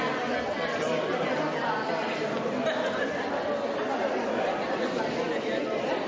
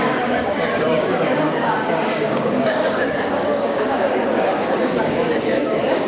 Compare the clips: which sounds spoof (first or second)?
second